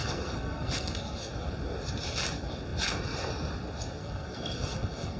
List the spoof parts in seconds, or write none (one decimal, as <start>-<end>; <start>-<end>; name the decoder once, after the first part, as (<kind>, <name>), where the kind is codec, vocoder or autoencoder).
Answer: 0.0-1.3 (codec, SNAC); 4.0-5.2